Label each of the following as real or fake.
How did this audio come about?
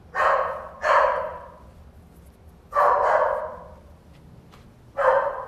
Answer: real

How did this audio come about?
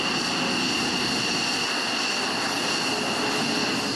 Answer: real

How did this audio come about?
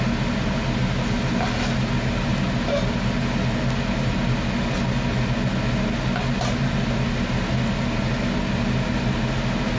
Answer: real